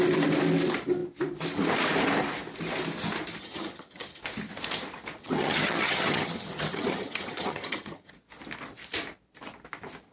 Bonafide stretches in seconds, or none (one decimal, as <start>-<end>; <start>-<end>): 0.0-3.4; 4.2-5.2; 8.1-10.1